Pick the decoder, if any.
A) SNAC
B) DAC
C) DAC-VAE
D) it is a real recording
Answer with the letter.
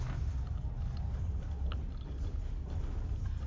D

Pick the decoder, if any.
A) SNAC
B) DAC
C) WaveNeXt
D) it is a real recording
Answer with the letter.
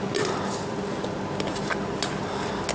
D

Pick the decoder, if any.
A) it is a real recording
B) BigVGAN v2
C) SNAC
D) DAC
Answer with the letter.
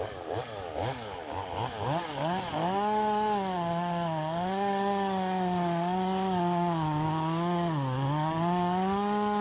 D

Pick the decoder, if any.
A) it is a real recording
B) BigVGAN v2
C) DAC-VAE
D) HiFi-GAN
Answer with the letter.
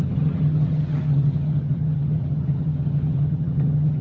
D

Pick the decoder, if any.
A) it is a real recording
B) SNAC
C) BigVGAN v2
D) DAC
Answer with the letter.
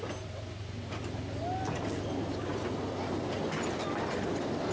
A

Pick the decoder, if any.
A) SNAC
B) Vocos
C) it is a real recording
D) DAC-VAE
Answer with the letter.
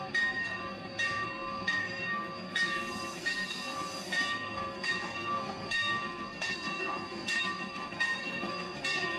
A